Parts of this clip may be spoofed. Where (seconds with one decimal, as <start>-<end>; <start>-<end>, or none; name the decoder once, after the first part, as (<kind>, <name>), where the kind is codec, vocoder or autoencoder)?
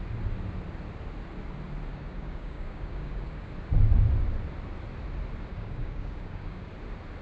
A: 1.9-3.5 (codec, DAC); 5.5-6.7